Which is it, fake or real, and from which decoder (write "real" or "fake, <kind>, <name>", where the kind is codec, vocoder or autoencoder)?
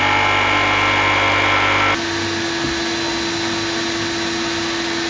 real